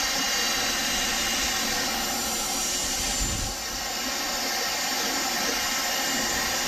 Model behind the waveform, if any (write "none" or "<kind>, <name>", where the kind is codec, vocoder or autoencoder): none